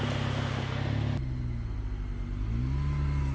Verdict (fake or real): real